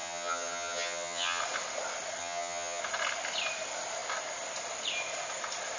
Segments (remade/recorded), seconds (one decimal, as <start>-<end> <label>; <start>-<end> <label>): 0.0-1.4 remade; 1.4-2.2 recorded; 2.2-2.8 remade; 2.8-5.8 recorded